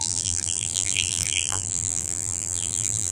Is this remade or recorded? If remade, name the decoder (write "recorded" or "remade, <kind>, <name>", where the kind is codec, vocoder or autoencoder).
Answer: remade, vocoder, BigVGAN v2